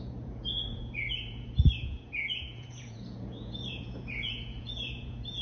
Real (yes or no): no